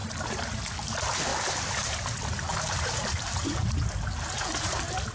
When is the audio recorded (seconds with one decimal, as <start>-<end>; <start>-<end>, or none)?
0.0-1.3; 1.9-2.5; 3.4-5.1